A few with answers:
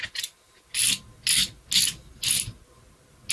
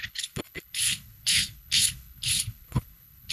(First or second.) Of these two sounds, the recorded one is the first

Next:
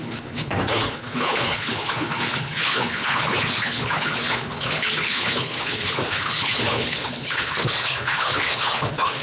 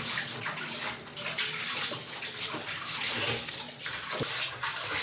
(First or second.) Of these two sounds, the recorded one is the second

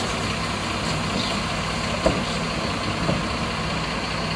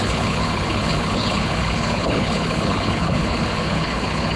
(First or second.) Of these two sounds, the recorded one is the first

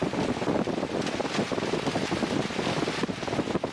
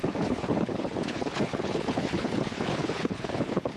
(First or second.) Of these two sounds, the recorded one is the first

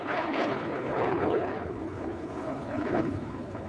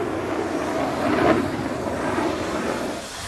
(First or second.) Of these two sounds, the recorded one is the second